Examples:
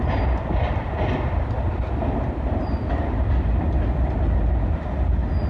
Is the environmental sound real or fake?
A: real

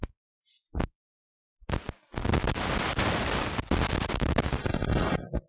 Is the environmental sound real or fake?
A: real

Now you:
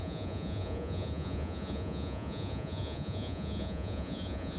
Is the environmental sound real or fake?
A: fake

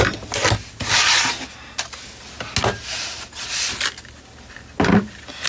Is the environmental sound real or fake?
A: real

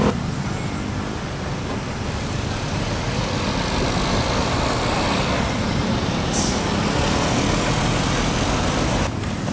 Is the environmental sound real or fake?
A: real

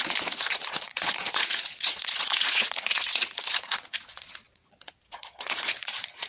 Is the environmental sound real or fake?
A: fake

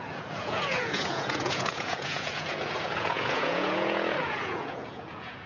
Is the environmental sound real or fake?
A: fake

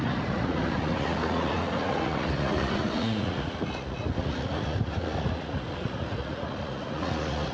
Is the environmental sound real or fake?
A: fake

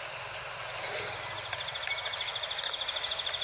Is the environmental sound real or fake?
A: real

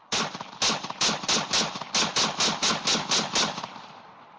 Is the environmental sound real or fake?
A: real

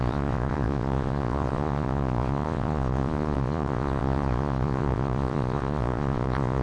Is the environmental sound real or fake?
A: fake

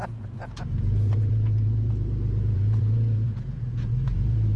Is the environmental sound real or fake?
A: fake